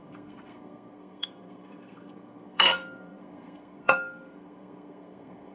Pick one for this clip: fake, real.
fake